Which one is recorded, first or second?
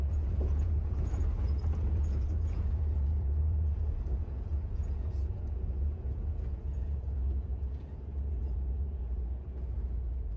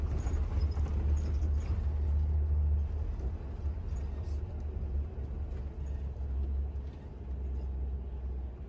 second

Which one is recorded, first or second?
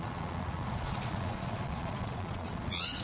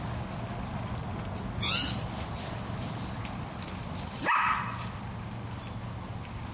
second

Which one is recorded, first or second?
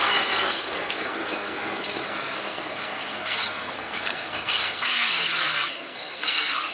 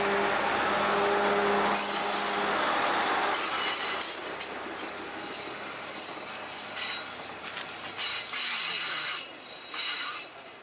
second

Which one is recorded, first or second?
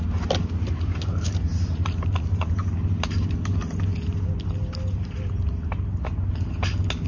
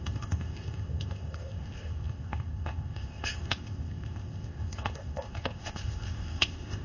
first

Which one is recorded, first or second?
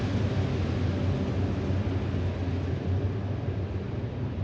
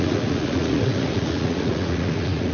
first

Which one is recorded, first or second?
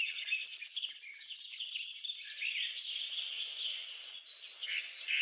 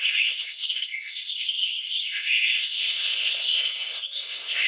first